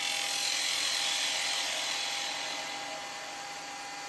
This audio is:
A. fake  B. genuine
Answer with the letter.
B